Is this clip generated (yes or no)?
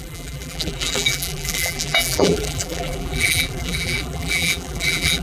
yes